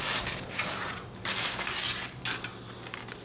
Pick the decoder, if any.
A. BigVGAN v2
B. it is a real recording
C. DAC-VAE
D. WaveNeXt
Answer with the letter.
B